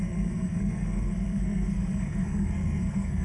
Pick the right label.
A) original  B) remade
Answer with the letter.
B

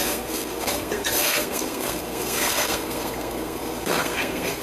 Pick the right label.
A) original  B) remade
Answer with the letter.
B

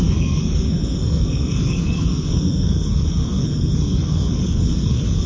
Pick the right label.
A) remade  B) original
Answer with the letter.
A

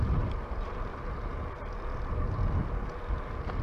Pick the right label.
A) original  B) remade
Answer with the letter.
A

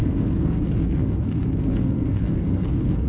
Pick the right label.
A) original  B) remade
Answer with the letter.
B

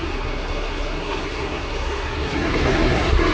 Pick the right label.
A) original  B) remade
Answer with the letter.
B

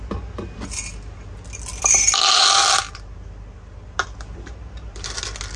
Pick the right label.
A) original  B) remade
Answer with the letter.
A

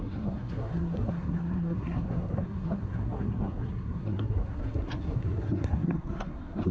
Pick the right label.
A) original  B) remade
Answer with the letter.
B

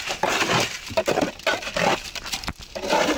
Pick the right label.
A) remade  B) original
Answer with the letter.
B